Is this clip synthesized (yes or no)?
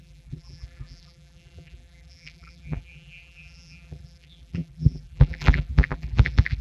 yes